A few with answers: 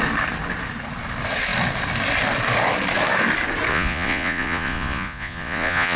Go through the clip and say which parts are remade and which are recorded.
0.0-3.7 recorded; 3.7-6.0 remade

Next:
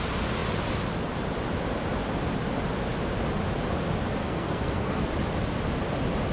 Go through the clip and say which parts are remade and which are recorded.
0.0-4.2 recorded; 4.2-5.0 remade; 5.0-6.3 recorded

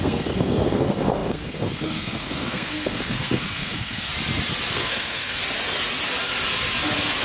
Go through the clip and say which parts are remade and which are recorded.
0.0-4.1 remade; 4.1-4.7 recorded; 4.7-5.4 remade; 5.4-7.2 recorded

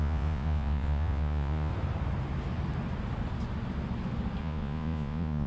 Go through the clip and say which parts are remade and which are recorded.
0.0-1.7 remade; 1.7-4.4 recorded; 4.4-5.5 remade

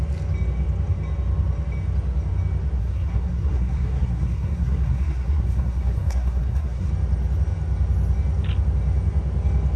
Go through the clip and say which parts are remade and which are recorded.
0.0-2.8 recorded; 2.8-6.9 remade; 6.9-9.8 recorded

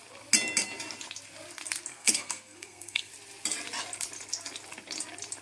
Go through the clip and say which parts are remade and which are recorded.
0.0-1.9 recorded; 1.9-3.1 remade; 3.1-5.4 recorded

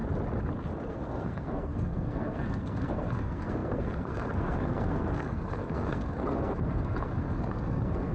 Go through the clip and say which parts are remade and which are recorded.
0.0-0.9 recorded; 0.9-8.1 remade

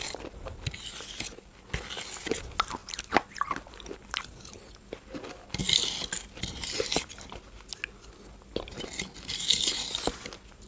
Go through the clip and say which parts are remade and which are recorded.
0.0-2.8 recorded; 2.8-3.7 remade; 3.7-5.6 recorded; 5.6-7.0 remade; 7.0-10.7 recorded